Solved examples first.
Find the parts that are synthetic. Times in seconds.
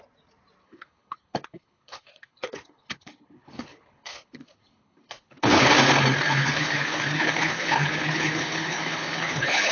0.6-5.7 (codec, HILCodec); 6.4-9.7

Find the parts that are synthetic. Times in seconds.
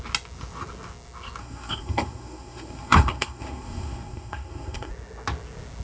1.4-4.9 (codec, SNAC)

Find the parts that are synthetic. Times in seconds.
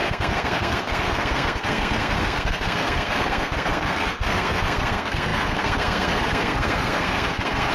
0.0-7.7 (codec, SNAC)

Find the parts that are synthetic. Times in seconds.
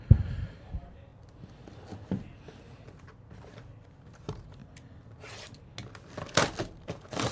0.0-1.1 (vocoder, BigVGAN v2); 4.0-4.6; 6.6-7.3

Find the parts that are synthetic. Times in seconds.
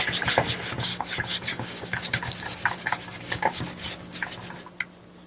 0.9-3.6 (codec, DAC)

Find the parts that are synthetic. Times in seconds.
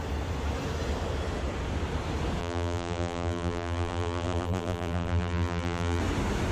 2.4-6.0 (vocoder, BigVGAN v2)